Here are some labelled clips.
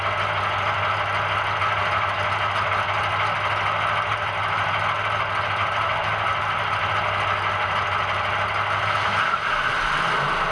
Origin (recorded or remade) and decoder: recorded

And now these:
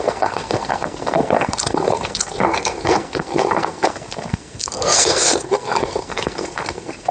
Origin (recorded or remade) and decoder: remade, codec, SNAC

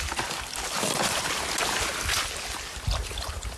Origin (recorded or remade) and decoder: recorded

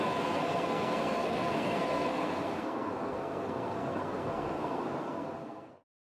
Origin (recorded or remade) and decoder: remade, codec, SNAC